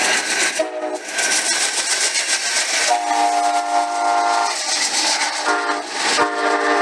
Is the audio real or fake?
real